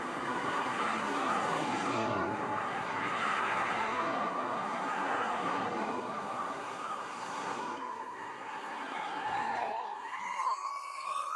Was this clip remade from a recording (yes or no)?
yes